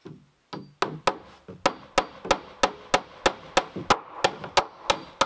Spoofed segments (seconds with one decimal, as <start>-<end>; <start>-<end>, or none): none